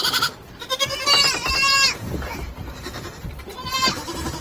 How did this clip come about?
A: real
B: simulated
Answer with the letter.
B